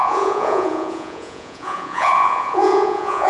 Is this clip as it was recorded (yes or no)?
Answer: no